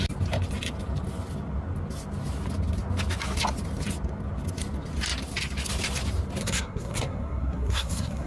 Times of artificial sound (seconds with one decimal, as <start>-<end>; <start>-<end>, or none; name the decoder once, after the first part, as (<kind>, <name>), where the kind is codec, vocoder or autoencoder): 6.4-8.3 (codec, SNAC)